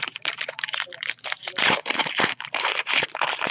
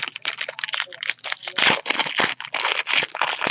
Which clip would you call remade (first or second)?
first